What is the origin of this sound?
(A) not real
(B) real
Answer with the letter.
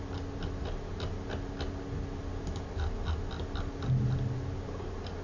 B